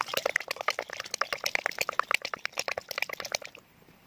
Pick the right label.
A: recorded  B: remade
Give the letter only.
A